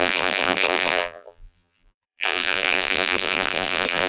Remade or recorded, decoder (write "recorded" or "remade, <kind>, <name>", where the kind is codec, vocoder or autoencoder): remade, vocoder, BigVGAN v2